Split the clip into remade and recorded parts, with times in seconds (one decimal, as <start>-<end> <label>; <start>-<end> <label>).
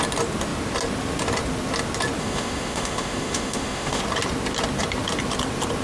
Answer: 0.0-2.2 recorded; 2.2-4.0 remade; 4.0-5.8 recorded